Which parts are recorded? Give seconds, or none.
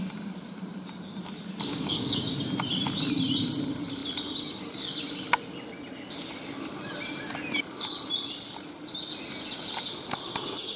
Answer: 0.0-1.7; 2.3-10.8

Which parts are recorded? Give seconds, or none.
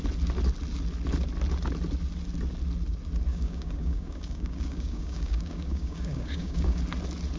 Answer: 0.0-3.3; 6.8-7.4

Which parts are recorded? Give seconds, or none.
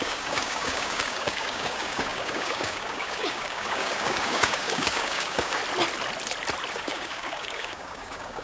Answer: 5.6-6.7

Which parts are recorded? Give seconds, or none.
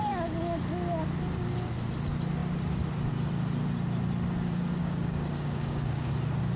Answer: 0.0-4.8; 6.1-6.6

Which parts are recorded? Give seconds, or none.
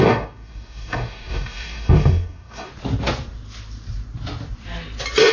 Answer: 2.7-5.3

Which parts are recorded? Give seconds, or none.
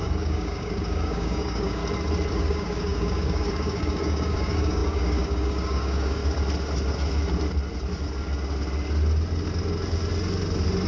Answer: 1.8-2.3; 6.2-10.9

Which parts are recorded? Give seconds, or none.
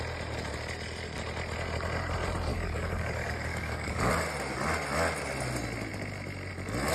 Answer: 0.0-2.5; 4.1-6.9